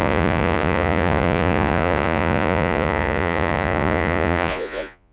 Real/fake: fake